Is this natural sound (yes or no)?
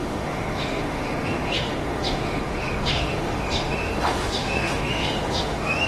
no